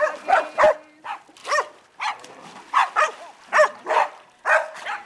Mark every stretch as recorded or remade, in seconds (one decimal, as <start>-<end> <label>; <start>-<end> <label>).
0.0-5.1 remade